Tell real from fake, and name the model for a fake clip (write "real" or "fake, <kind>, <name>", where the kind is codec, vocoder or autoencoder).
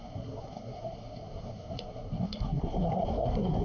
fake, codec, SNAC